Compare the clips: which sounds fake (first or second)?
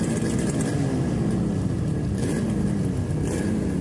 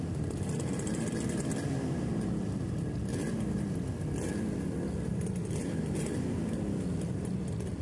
second